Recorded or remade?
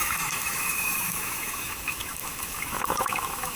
remade